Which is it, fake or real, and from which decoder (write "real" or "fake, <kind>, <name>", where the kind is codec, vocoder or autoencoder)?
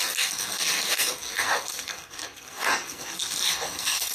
fake, codec, SNAC